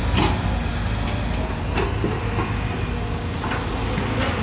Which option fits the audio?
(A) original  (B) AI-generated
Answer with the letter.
A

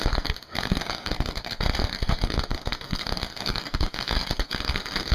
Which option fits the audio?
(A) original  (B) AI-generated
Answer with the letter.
B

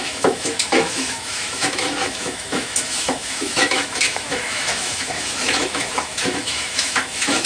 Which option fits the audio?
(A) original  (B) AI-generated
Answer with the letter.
B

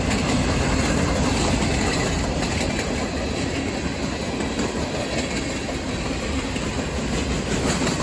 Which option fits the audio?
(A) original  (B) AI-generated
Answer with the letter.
A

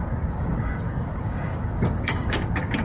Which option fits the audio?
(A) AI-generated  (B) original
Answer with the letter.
A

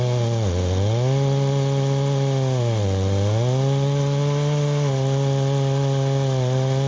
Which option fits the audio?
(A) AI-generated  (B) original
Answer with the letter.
B